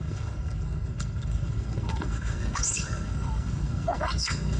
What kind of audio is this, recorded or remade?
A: remade